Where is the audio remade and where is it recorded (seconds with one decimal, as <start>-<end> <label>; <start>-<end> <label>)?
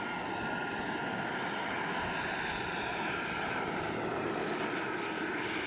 0.0-2.9 recorded; 2.9-4.4 remade; 4.4-5.7 recorded